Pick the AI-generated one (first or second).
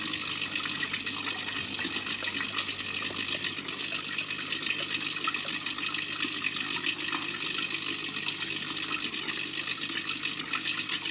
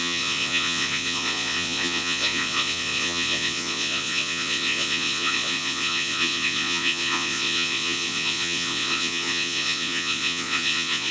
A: second